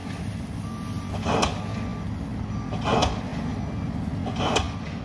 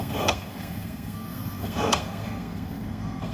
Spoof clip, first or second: second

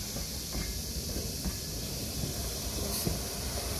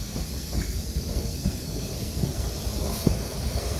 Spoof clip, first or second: second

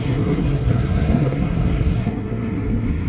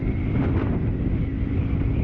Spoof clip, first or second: first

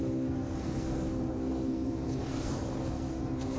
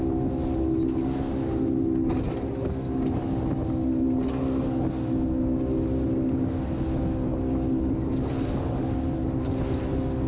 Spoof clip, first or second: first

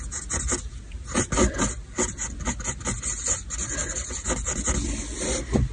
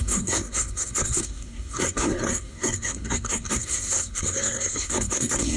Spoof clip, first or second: second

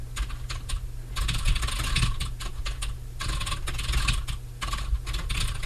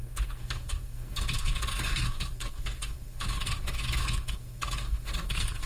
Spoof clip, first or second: second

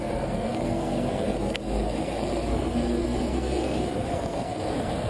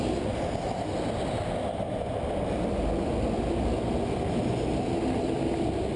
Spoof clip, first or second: first